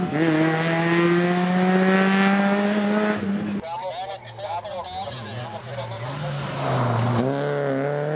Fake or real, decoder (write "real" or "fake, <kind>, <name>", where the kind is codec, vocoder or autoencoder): real